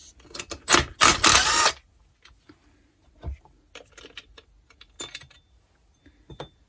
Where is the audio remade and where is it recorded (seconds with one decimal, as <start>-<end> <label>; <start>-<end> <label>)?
0.0-6.7 recorded